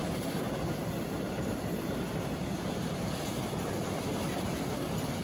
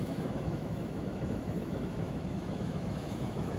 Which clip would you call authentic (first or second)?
first